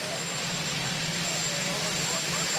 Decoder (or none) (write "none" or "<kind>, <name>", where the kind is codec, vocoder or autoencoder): none